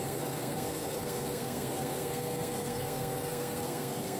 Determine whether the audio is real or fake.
fake